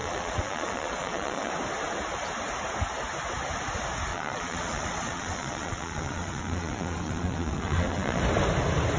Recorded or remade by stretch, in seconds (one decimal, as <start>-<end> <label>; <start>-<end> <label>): 0.0-1.5 remade; 1.5-4.1 recorded; 4.1-8.2 remade; 8.2-9.0 recorded